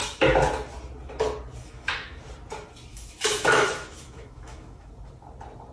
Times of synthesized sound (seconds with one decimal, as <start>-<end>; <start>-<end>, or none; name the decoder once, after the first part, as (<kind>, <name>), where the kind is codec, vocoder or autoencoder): 1.6-2.2 (autoencoder, DAC-VAE); 2.9-4.9